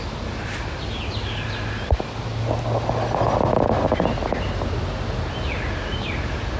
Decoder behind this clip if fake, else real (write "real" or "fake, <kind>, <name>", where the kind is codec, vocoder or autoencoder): real